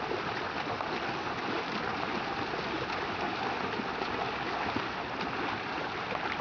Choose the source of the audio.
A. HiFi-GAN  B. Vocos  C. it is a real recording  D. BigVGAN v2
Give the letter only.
C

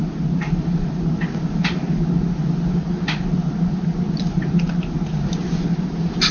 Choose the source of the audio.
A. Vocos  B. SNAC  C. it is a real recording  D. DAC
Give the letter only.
C